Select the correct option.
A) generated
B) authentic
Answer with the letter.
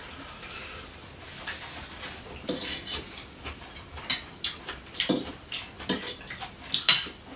B